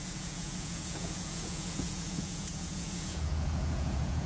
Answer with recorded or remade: remade